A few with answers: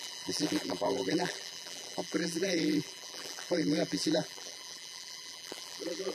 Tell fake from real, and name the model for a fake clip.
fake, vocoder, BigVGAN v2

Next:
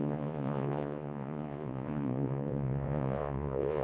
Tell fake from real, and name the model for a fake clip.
fake, vocoder, Vocos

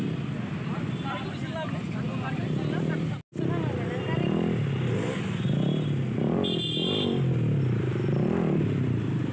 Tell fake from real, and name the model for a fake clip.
real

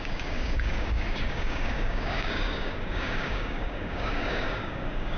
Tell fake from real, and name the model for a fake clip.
fake, codec, DAC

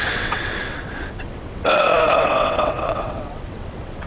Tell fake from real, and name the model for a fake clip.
fake, vocoder, WaveNeXt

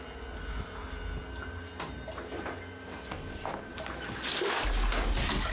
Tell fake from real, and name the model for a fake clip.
real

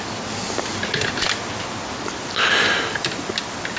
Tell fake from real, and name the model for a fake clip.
real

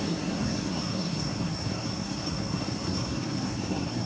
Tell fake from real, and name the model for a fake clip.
fake, codec, SNAC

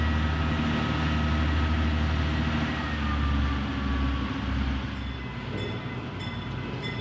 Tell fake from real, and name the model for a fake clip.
real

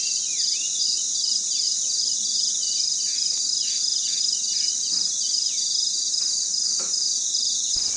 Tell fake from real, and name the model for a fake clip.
real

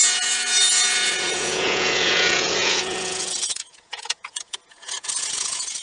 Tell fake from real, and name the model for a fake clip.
fake, vocoder, Vocos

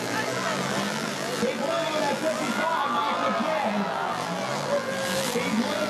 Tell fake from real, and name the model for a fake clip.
fake, vocoder, BigVGAN v2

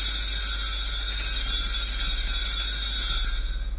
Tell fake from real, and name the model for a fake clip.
real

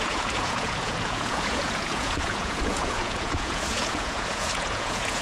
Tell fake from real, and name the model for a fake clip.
fake, vocoder, Vocos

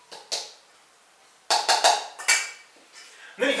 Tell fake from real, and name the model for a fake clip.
real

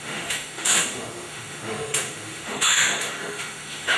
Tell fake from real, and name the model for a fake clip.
fake, autoencoder, DAC-VAE